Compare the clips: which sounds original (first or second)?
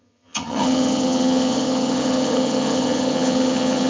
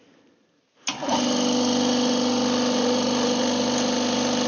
second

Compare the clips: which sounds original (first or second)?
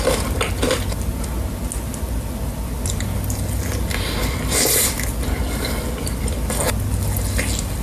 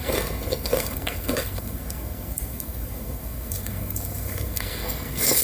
first